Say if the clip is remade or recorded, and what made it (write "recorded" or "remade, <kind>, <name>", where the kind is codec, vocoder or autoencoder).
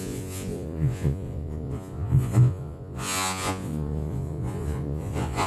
remade, vocoder, Vocos